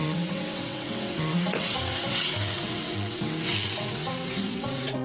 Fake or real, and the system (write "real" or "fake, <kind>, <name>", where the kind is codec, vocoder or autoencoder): fake, vocoder, WaveNeXt